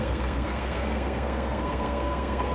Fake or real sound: fake